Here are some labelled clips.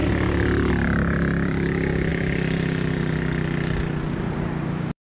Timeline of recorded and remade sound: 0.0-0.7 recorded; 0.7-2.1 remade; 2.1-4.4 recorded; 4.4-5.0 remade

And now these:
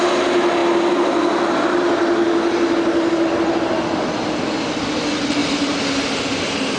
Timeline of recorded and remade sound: 0.0-6.8 recorded

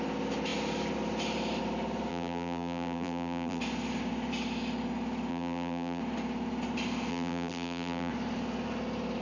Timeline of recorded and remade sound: 0.0-2.1 recorded; 2.1-3.6 remade; 3.6-5.3 recorded; 5.3-6.0 remade; 6.0-7.1 recorded; 7.1-8.1 remade; 8.1-9.2 recorded

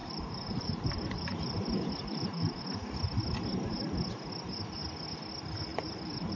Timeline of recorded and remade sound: 0.0-2.6 remade; 2.6-5.7 recorded; 5.7-6.4 remade

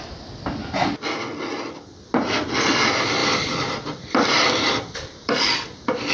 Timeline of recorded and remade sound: 0.0-3.2 recorded; 3.2-5.3 remade; 5.3-6.1 recorded